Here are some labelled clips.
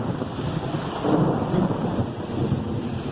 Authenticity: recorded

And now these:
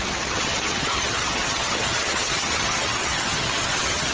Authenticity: remade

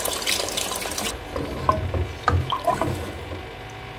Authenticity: recorded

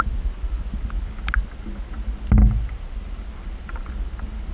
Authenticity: recorded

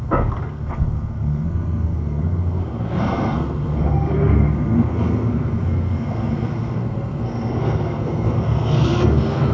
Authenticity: remade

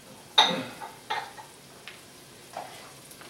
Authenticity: recorded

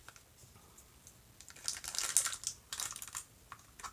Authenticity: recorded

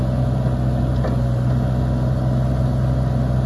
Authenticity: recorded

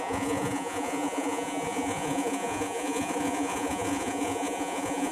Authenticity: remade